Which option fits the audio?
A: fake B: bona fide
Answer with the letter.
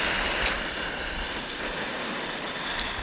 B